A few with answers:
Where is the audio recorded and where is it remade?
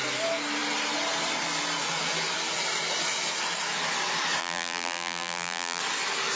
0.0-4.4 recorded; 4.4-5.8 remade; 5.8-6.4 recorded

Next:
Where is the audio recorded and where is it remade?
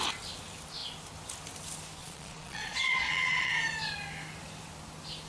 0.0-2.0 recorded; 2.0-3.5 remade; 3.5-5.3 recorded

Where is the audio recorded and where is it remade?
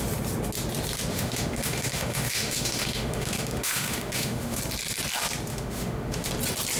0.0-1.1 recorded; 1.1-4.6 remade; 4.6-5.5 recorded; 5.5-6.3 remade; 6.3-6.8 recorded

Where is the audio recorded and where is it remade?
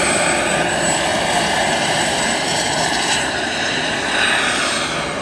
0.0-1.1 recorded; 1.1-4.2 remade; 4.2-5.2 recorded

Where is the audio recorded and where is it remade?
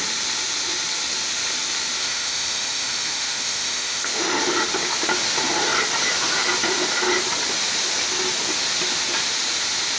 0.0-2.0 recorded; 2.0-4.4 remade; 4.4-10.0 recorded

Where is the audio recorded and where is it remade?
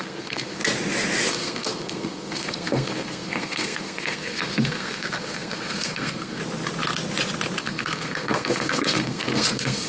0.0-0.6 remade; 0.6-1.3 recorded; 1.3-6.4 remade; 6.4-7.6 recorded; 7.6-9.9 remade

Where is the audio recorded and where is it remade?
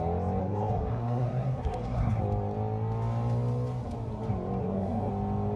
0.0-0.4 recorded; 0.4-2.2 remade; 2.2-4.6 recorded; 4.6-5.1 remade; 5.1-5.6 recorded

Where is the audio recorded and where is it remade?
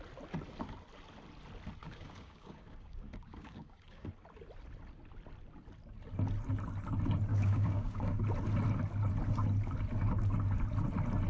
0.0-1.8 recorded; 1.8-4.1 remade; 4.1-7.3 recorded; 7.3-8.2 remade; 8.2-11.3 recorded